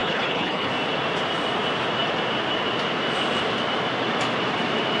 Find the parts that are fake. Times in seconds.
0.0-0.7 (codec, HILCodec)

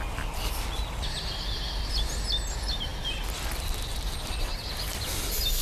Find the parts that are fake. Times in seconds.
none